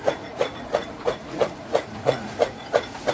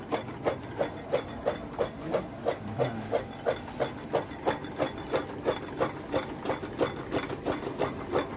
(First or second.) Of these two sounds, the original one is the second